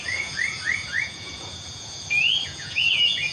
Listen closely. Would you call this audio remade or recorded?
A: remade